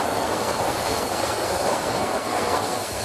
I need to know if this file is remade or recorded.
remade